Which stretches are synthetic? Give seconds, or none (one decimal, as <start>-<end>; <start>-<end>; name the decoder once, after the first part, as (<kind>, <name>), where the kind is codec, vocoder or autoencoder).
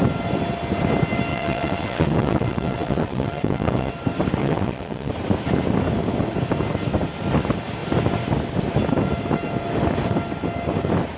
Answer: 1.3-3.9 (vocoder, WaveNeXt); 4.4-5.1